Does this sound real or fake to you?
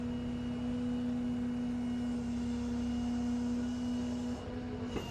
real